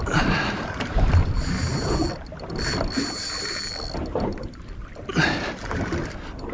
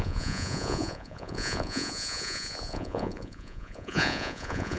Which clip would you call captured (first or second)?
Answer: first